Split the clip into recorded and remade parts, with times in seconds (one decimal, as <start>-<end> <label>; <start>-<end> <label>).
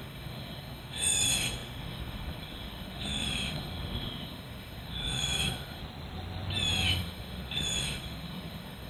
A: 0.0-5.8 remade; 5.8-6.9 recorded; 6.9-8.9 remade